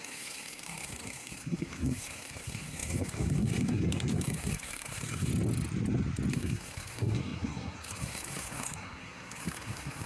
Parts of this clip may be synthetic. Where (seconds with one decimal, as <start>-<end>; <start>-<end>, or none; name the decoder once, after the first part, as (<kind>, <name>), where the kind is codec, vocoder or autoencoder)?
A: 0.0-5.3 (codec, SNAC); 6.3-10.1